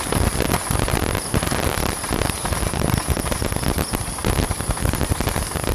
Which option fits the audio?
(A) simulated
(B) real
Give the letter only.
A